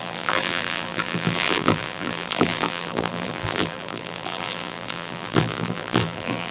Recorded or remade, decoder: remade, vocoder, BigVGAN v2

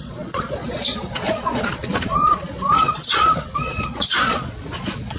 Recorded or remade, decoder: remade, vocoder, Vocos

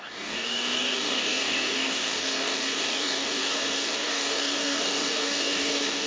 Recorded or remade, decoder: remade, codec, DAC